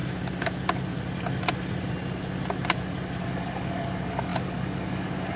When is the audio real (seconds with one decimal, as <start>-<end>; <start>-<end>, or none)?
0.0-3.2

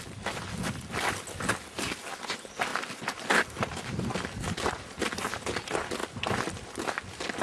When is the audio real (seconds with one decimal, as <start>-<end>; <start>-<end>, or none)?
0.0-7.4

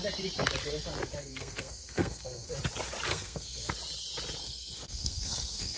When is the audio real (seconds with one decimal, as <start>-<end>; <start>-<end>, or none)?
0.0-1.2; 2.5-3.1; 3.7-4.4

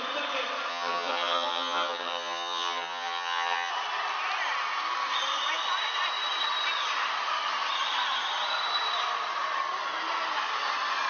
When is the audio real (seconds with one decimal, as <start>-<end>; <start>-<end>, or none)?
0.0-0.7; 3.7-11.1

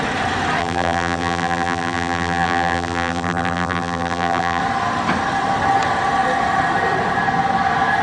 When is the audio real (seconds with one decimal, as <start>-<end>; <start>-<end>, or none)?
0.0-0.6; 4.6-8.0